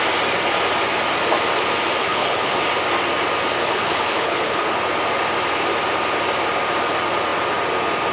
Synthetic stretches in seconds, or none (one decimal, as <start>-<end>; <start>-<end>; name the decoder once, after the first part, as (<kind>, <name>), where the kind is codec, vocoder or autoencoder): 2.0-2.5 (codec, HILCodec); 3.6-4.7